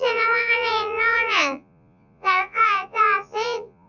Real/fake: fake